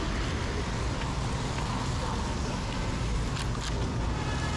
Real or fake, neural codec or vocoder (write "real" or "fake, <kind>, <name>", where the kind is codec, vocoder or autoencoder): real